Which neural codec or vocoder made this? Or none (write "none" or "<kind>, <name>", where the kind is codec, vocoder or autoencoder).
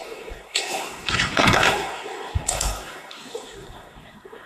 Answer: codec, SNAC